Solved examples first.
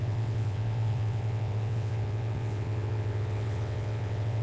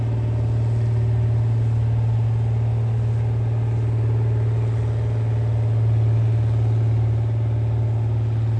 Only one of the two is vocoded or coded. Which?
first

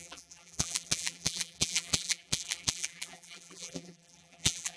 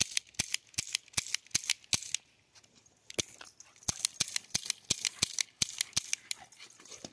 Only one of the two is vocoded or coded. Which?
first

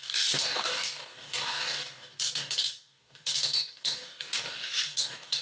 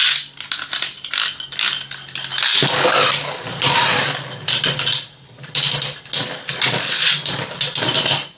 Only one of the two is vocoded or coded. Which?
first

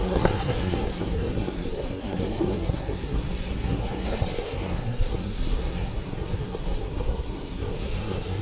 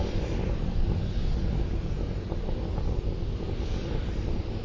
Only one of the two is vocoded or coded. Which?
first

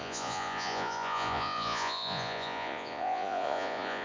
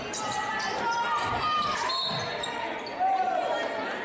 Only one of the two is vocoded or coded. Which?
first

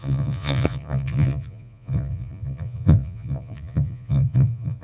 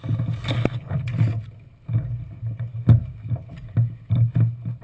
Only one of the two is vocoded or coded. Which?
first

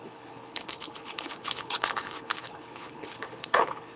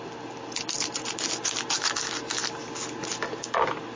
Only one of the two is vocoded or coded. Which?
first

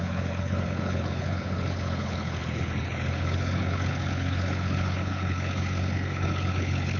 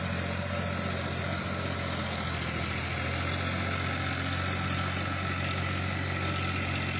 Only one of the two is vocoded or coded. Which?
first